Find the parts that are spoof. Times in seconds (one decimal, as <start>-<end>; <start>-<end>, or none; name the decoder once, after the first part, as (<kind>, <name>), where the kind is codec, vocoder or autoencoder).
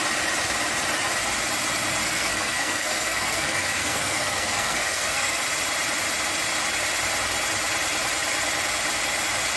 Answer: 2.0-5.4 (codec, SNAC)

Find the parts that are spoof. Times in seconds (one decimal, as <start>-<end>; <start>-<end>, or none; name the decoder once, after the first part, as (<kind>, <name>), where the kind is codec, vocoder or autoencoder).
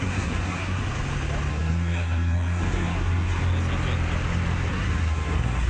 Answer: 0.0-0.8 (codec, SNAC); 1.5-3.4; 4.7-5.7